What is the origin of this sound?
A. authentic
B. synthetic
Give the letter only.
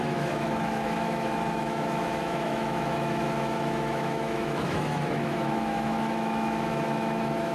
B